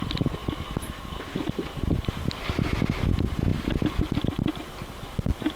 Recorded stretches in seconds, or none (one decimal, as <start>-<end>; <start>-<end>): 0.0-5.6